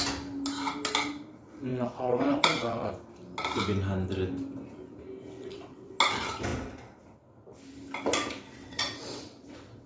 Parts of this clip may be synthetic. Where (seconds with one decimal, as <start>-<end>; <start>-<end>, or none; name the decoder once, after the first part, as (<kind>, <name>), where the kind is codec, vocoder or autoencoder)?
1.7-2.9 (vocoder, WaveNeXt); 5.4-5.9; 8.6-9.9

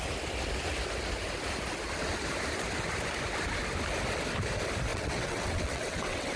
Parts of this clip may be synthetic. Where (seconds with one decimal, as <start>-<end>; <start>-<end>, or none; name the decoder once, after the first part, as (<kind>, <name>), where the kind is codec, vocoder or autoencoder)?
4.9-6.4 (vocoder, WaveNeXt)

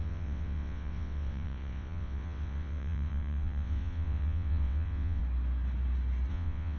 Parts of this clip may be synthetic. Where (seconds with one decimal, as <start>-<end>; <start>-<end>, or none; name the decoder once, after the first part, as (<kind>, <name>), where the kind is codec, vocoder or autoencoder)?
0.0-5.2 (vocoder, WaveNeXt); 6.3-6.8